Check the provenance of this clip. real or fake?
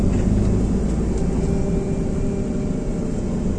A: real